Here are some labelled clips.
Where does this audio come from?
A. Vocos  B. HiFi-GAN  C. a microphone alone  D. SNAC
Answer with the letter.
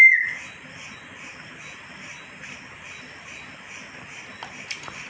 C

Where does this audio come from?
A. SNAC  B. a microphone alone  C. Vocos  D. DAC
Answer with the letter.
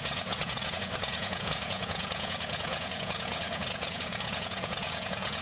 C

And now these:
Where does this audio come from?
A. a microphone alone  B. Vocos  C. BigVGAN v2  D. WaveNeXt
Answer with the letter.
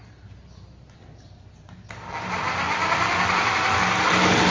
A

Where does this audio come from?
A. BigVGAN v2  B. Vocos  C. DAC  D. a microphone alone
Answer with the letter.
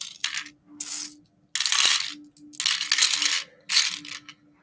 D